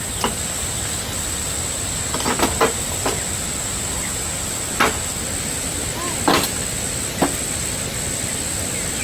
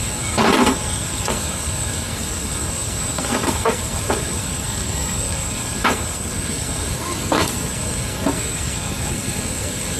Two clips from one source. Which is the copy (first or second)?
second